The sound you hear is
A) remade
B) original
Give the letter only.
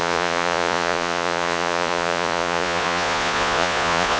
A